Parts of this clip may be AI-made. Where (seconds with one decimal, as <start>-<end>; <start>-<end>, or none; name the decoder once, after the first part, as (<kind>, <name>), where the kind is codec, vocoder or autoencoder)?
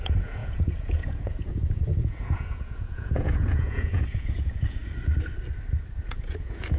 0.0-4.8 (vocoder, Vocos); 6.0-6.8